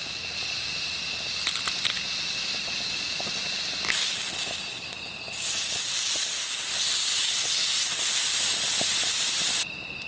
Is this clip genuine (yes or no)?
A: yes